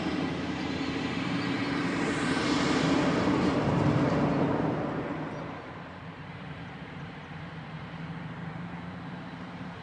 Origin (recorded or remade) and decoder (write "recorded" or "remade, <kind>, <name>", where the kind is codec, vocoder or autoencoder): remade, vocoder, BigVGAN v2